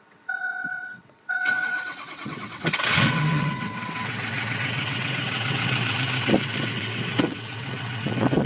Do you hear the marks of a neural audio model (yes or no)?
yes